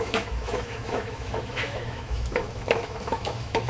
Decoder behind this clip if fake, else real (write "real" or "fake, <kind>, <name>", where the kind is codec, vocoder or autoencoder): fake, autoencoder, DAC-VAE